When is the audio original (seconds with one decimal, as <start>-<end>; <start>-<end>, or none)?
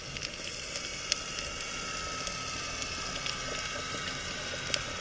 0.0-5.0